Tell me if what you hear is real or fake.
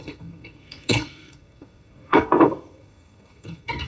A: fake